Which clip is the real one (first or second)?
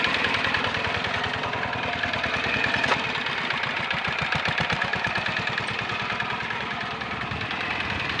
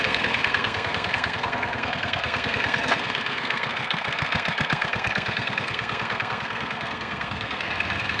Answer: first